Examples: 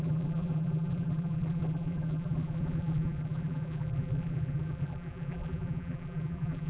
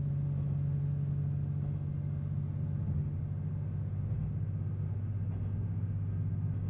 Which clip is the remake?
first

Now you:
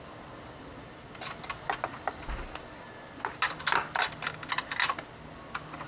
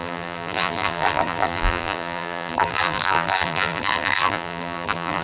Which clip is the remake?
second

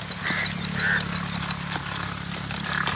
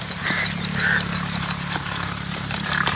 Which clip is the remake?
second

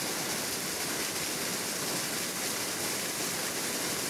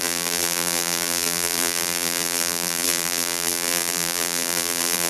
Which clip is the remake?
second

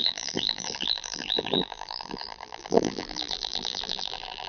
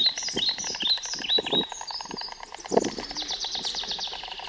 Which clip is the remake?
first